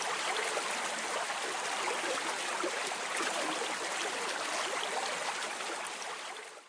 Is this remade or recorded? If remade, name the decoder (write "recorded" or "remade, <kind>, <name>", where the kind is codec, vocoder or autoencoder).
recorded